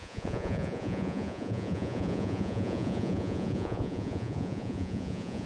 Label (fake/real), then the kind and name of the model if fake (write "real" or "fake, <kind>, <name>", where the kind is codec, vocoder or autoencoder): fake, vocoder, Vocos